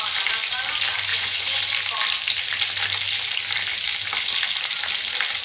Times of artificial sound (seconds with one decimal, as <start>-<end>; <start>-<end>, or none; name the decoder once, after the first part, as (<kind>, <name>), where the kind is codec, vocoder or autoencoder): 1.1-1.6 (vocoder, Vocos)